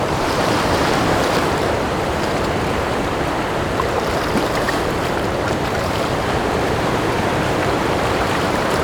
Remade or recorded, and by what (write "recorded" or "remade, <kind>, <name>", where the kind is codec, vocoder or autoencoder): remade, vocoder, BigVGAN v2